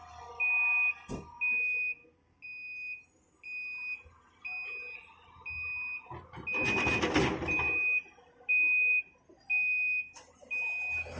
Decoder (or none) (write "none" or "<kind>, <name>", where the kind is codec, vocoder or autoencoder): none